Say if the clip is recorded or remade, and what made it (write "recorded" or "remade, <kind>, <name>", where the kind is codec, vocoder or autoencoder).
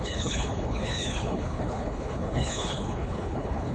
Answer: remade, codec, HILCodec